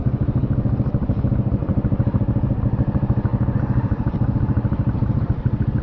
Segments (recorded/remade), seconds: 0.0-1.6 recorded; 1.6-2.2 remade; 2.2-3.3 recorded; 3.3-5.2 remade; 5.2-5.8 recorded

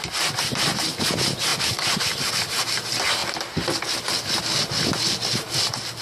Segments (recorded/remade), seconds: 0.0-6.0 recorded

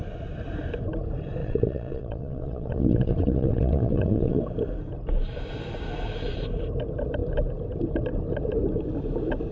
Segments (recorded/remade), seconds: 0.0-1.4 recorded; 1.4-4.4 remade; 4.4-9.5 recorded

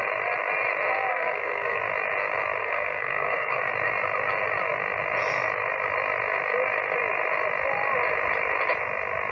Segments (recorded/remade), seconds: 0.0-1.1 recorded; 1.1-1.8 remade; 1.8-2.6 recorded; 2.6-3.6 remade; 3.6-9.3 recorded

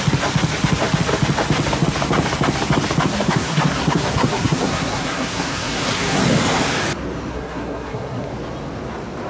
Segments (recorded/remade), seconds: 0.0-3.1 recorded; 3.1-6.2 remade; 6.2-7.3 recorded; 7.3-8.3 remade; 8.3-9.3 recorded

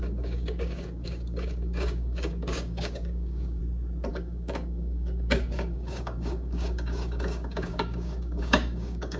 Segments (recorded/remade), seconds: 0.0-3.6 remade; 3.6-4.1 recorded; 4.1-9.2 remade

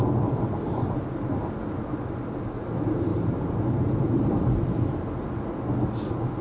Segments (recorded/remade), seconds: 0.0-3.1 recorded; 3.1-4.3 remade; 4.3-6.4 recorded